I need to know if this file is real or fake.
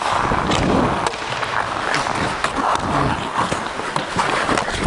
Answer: real